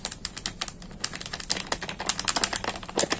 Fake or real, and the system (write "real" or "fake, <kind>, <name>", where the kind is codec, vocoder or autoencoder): real